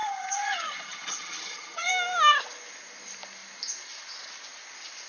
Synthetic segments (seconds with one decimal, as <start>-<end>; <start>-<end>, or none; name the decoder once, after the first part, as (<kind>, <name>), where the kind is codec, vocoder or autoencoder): 0.0-1.9 (vocoder, HiFi-GAN)